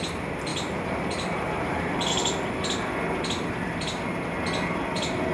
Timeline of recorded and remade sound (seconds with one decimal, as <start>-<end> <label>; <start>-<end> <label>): 0.0-0.5 recorded; 0.5-2.1 remade; 2.1-5.3 recorded